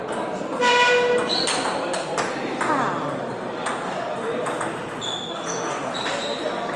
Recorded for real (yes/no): yes